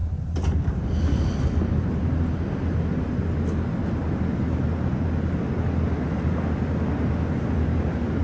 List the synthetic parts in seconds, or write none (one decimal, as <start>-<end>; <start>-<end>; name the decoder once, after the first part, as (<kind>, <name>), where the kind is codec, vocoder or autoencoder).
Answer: none